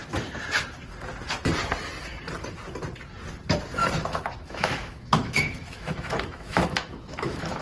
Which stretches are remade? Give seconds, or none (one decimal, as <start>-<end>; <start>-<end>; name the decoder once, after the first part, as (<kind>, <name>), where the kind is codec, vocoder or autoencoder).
3.8-7.6 (autoencoder, DAC-VAE)